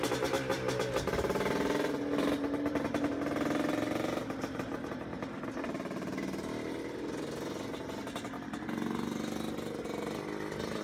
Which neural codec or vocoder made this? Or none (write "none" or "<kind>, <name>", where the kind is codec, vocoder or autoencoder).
none